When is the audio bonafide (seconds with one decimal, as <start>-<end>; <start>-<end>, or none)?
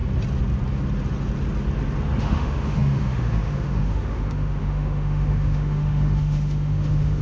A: 0.0-2.2